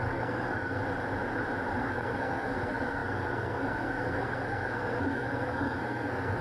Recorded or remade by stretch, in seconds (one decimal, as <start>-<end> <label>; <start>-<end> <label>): 0.0-0.8 remade; 0.8-1.8 recorded; 1.8-6.4 remade